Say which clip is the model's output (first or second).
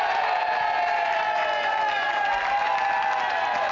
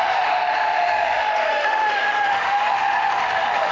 second